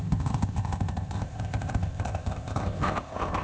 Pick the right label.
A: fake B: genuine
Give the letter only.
A